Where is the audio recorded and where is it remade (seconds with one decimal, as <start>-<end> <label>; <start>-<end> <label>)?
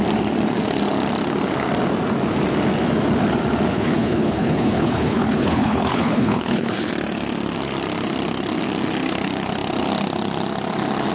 0.0-3.7 recorded; 3.7-6.9 remade; 6.9-11.1 recorded